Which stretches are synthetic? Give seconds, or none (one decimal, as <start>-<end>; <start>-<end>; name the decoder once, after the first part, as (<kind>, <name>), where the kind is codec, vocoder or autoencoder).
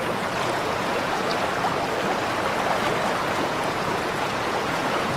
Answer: 0.0-1.3 (vocoder, Vocos); 3.3-5.2